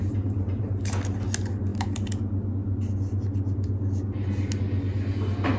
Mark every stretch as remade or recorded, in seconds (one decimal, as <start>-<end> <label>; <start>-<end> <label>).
0.0-0.8 remade; 0.8-5.6 recorded